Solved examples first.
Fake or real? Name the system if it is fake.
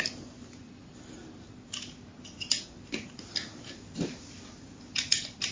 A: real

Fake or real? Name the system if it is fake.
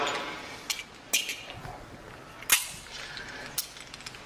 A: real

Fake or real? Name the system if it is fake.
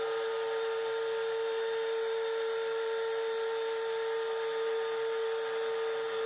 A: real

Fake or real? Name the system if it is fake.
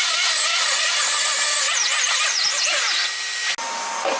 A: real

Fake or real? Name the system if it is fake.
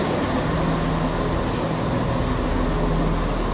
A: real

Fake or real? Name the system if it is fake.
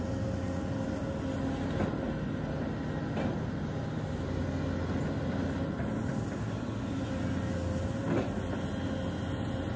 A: real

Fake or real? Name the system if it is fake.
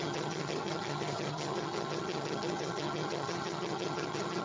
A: fake, vocoder, HiFi-GAN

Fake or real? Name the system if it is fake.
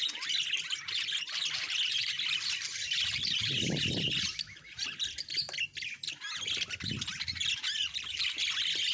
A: real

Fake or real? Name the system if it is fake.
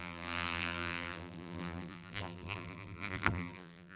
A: fake, vocoder, BigVGAN v2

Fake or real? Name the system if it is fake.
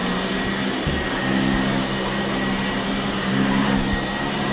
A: real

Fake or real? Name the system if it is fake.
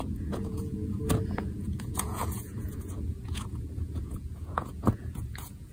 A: fake, vocoder, Vocos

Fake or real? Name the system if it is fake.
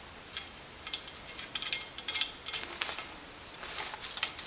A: real